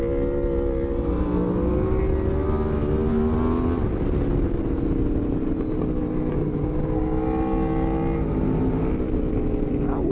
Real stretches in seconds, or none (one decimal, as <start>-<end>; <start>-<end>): 0.0-10.1